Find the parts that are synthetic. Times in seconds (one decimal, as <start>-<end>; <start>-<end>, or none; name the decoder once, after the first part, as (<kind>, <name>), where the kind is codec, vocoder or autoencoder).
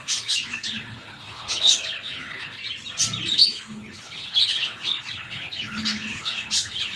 0.0-2.6 (codec, HILCodec); 3.3-7.0